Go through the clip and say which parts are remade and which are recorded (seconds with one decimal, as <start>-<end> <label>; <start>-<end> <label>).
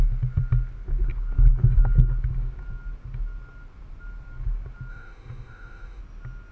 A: 0.0-4.9 recorded; 4.9-6.0 remade; 6.0-6.5 recorded